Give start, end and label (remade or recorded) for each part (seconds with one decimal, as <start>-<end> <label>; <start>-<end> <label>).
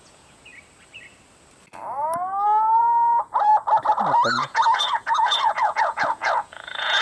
0.0-0.5 remade; 0.5-2.8 recorded; 2.8-3.5 remade; 3.5-4.3 recorded; 4.3-7.0 remade